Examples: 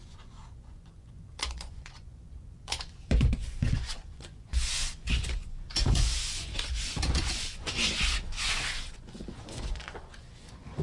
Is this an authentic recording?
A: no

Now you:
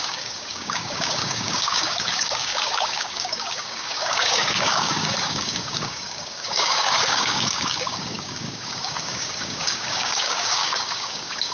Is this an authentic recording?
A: no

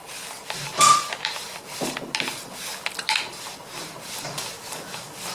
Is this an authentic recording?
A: yes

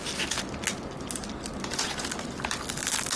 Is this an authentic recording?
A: yes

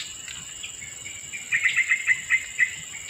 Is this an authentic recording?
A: yes